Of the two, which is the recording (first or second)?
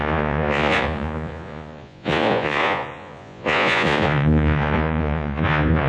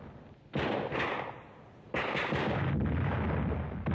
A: second